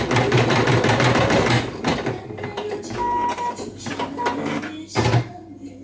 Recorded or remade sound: recorded